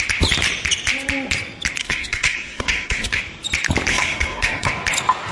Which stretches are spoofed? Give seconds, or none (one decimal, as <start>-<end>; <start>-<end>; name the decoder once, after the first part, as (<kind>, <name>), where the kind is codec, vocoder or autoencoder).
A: 1.8-3.2 (codec, SNAC); 3.9-4.7